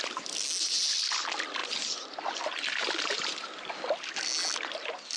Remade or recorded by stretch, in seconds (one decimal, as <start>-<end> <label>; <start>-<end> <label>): 0.0-5.2 recorded